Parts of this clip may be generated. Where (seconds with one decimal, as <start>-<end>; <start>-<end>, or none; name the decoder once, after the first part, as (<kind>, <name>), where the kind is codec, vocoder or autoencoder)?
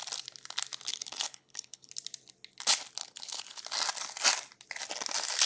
0.9-1.9 (codec, HILCodec); 3.0-3.6